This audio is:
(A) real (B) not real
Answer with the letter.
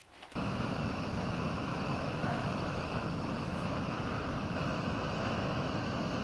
B